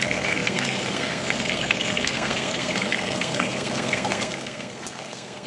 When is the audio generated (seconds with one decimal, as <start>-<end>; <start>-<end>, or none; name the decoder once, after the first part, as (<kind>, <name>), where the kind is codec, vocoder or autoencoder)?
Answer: 0.0-5.5 (codec, SNAC)